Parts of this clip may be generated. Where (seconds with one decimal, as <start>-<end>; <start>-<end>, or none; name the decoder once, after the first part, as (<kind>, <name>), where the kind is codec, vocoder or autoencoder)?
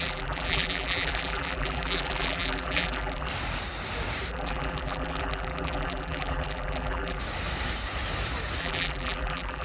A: 0.0-3.3 (vocoder, BigVGAN v2); 4.3-7.2; 8.6-9.6